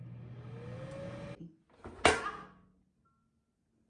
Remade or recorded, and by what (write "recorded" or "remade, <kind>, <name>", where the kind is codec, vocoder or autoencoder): recorded